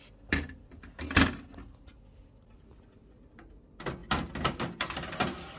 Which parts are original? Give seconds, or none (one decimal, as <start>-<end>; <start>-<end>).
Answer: 0.0-5.6